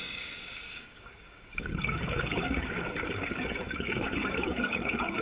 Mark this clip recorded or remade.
remade